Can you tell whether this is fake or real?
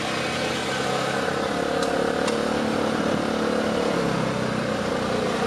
real